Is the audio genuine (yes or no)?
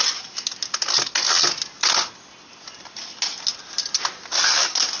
yes